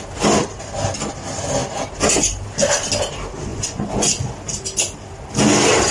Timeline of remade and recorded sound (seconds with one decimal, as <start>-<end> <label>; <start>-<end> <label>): 0.0-3.5 recorded; 3.5-4.3 remade; 4.3-5.9 recorded